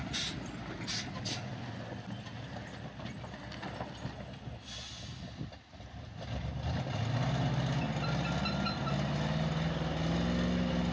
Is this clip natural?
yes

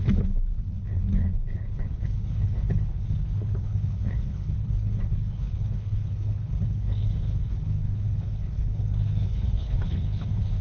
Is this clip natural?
no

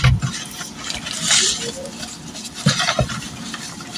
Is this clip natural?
yes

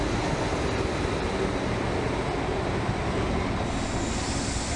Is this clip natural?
yes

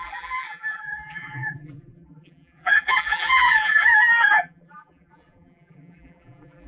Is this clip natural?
no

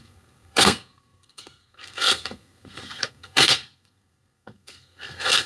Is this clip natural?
no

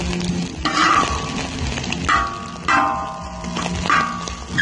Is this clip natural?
yes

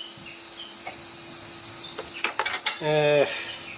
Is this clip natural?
yes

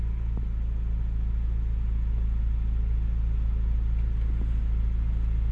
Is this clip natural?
yes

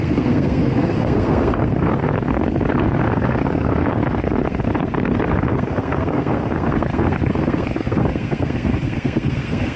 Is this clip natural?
no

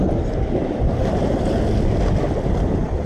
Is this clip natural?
yes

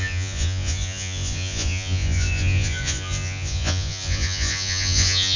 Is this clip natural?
no